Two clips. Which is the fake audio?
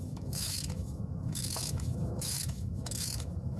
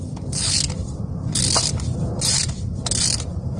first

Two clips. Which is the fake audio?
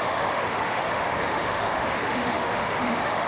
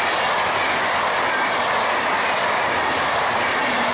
first